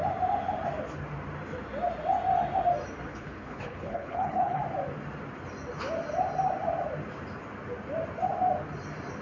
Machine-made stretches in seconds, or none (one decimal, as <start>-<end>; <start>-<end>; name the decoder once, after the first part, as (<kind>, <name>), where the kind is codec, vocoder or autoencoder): 3.1-4.6 (codec, HILCodec)